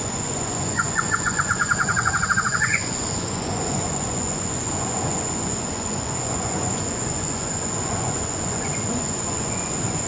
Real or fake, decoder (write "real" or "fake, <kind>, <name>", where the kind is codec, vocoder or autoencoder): fake, vocoder, Vocos